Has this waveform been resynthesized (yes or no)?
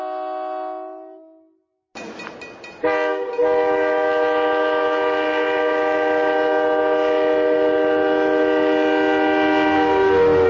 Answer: no